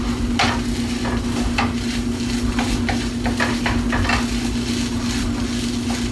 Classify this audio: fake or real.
real